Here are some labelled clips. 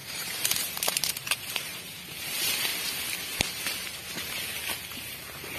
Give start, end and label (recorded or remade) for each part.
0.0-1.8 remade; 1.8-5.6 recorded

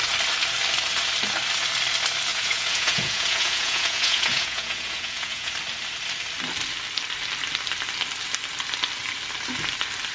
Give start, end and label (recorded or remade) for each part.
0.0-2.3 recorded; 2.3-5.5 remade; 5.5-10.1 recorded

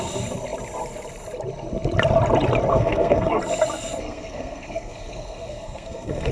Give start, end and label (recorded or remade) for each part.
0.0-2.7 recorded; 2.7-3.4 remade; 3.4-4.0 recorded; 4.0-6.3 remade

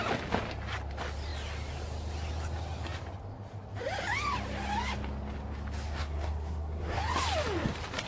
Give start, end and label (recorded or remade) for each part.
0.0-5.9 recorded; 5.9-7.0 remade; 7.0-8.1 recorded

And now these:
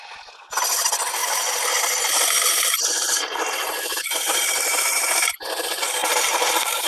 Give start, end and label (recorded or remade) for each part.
0.0-1.2 recorded; 1.2-5.3 remade; 5.3-6.0 recorded; 6.0-6.9 remade

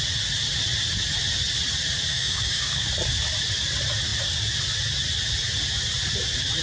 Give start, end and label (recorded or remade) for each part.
0.0-2.1 recorded; 2.1-2.9 remade; 2.9-6.6 recorded

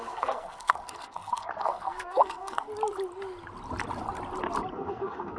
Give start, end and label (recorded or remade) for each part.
0.0-2.7 remade; 2.7-4.7 recorded; 4.7-5.4 remade